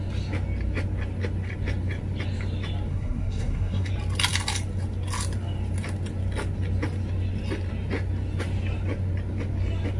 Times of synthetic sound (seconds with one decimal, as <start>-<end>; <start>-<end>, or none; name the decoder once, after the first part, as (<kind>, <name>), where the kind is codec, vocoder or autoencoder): 2.9-3.9 (codec, SNAC)